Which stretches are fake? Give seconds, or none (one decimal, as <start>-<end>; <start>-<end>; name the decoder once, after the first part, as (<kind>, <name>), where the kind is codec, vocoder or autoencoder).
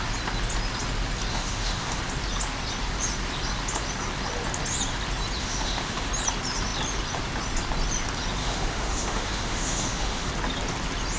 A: 1.3-2.0 (autoencoder, DAC-VAE); 5.4-6.1; 8.4-10.3